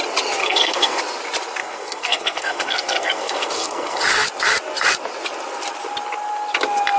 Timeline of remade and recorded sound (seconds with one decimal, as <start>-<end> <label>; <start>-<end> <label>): 0.0-0.4 recorded; 0.4-1.0 remade; 1.0-1.6 recorded; 1.6-4.0 remade; 4.0-7.0 recorded